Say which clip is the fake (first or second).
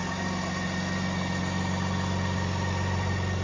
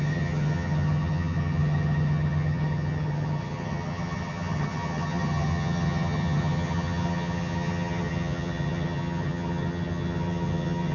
second